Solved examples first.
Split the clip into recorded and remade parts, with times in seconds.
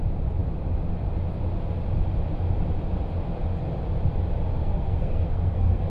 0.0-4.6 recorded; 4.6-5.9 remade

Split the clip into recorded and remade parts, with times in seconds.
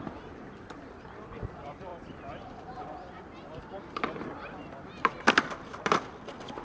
0.0-6.6 remade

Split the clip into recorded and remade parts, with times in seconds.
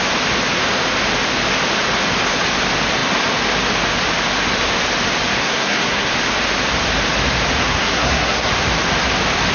0.0-5.4 recorded; 5.4-6.1 remade; 6.1-7.6 recorded; 7.6-8.5 remade; 8.5-9.5 recorded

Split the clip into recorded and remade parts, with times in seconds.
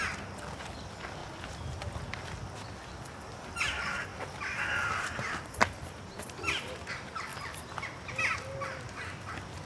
0.0-1.2 recorded; 1.2-2.0 remade; 2.0-4.1 recorded; 4.1-6.2 remade; 6.2-9.7 recorded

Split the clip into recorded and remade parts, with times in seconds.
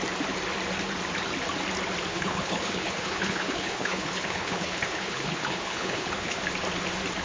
0.0-2.1 recorded; 2.1-6.4 remade; 6.4-7.2 recorded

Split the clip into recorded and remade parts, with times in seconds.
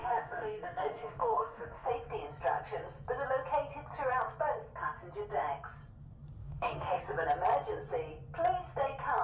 0.0-1.9 remade; 1.9-6.4 recorded; 6.4-7.0 remade; 7.0-9.2 recorded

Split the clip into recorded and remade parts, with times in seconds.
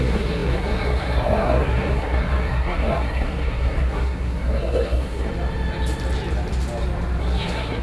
0.0-5.3 remade; 5.3-7.2 recorded; 7.2-7.8 remade